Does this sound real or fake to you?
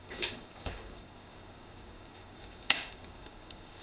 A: fake